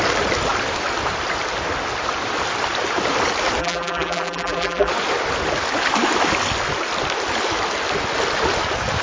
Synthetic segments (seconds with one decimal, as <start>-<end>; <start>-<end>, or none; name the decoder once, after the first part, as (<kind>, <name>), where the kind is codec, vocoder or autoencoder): 3.6-4.9 (vocoder, BigVGAN v2)